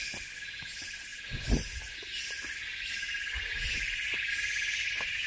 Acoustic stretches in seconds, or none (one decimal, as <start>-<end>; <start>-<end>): 0.0-5.3

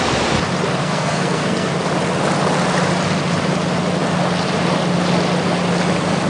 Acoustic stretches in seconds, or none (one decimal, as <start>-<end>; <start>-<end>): 0.0-0.8; 1.7-6.3